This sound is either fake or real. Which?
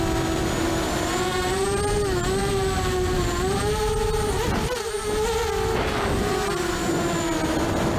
real